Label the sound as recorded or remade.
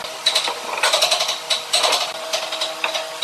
recorded